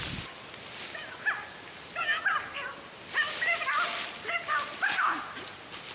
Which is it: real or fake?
real